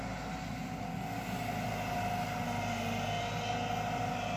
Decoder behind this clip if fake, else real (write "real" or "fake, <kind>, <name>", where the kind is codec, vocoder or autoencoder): real